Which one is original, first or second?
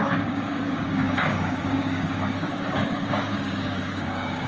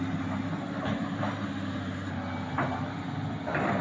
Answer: second